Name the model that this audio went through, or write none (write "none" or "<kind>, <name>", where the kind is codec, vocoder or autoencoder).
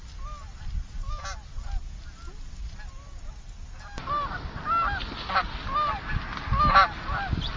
none